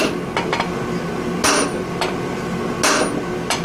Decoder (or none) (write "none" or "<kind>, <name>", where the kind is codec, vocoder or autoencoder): none